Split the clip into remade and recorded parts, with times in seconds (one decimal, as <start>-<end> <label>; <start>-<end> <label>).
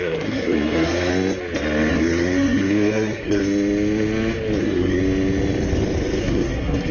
0.0-1.1 remade; 1.1-1.9 recorded; 1.9-3.4 remade; 3.4-4.6 recorded; 4.6-5.0 remade; 5.0-6.2 recorded; 6.2-6.9 remade